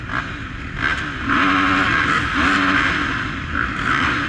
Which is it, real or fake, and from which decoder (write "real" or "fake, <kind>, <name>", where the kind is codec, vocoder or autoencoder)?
real